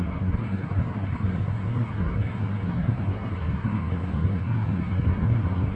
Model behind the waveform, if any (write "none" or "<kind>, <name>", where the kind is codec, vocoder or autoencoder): codec, SNAC